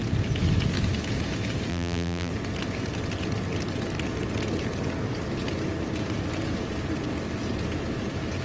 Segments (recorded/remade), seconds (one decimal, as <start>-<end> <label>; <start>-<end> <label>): 0.0-1.7 recorded; 1.7-2.3 remade; 2.3-8.4 recorded